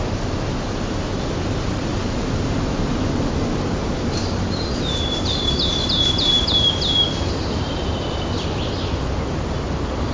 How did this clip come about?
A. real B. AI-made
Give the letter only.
A